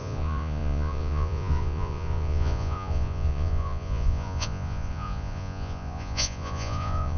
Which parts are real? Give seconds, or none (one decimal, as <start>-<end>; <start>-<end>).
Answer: none

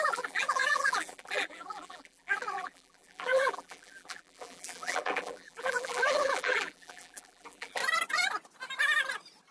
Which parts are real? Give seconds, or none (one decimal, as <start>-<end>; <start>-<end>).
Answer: 7.8-9.5

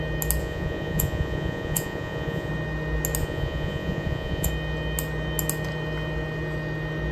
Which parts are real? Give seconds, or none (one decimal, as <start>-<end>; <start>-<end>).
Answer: 0.0-0.4; 2.5-3.2; 4.5-7.1